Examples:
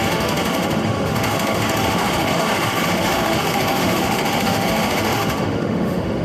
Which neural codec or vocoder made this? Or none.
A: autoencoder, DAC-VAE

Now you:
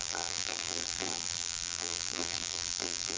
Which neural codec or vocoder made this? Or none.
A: vocoder, BigVGAN v2